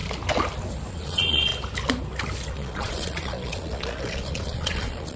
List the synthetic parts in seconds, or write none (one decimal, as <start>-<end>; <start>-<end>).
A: 0.9-1.5; 2.5-5.2